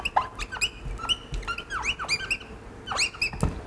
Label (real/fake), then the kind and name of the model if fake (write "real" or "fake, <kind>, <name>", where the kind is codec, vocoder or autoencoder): real